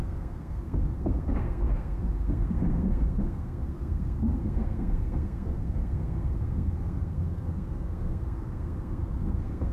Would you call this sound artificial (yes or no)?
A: yes